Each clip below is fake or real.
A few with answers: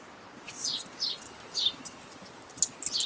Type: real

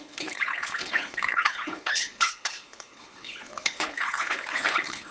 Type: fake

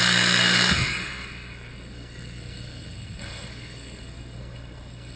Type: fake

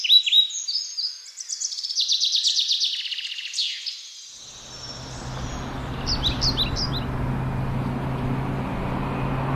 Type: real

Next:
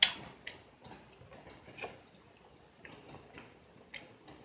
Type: real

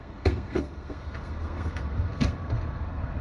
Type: fake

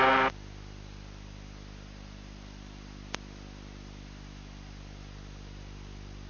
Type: real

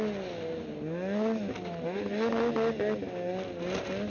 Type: real